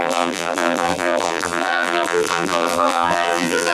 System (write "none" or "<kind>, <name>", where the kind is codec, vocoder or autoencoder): vocoder, BigVGAN v2